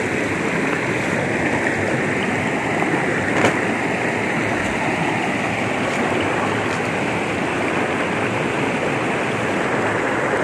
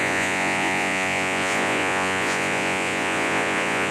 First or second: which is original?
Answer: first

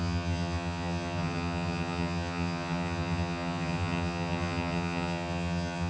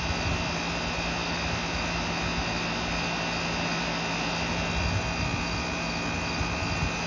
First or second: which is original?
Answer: second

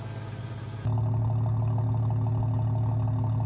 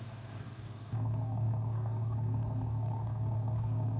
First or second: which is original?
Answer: first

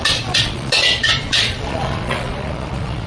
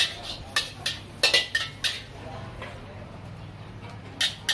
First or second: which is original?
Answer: second